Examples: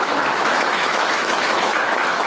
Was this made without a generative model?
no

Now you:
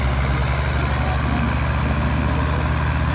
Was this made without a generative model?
yes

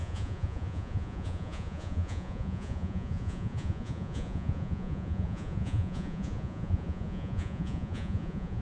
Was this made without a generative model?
no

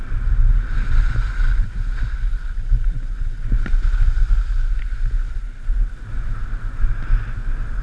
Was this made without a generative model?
yes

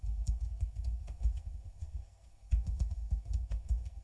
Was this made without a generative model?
no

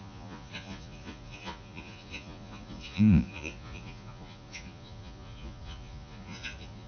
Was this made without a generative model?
no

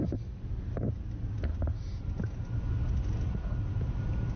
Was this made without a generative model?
yes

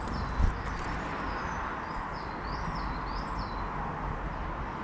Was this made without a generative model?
yes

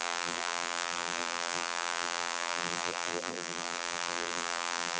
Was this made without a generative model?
no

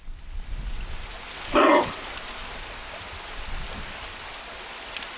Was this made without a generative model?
yes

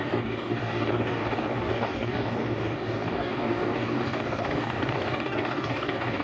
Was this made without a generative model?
no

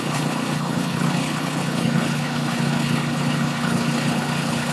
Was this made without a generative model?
no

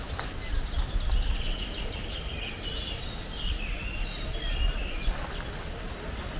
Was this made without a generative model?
yes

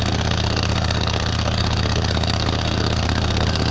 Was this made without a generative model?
no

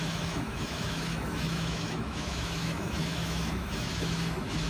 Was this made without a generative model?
no